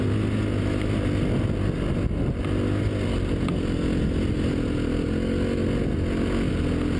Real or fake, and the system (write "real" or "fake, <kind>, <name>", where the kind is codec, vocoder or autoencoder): real